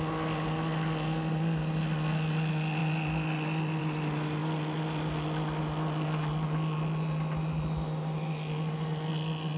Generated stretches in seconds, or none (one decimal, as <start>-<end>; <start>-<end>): none